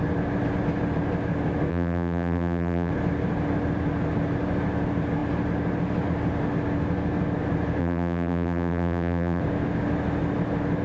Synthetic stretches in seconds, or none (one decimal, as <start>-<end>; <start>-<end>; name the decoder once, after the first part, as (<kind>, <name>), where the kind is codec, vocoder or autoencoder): 1.7-2.9 (vocoder, BigVGAN v2); 7.8-9.4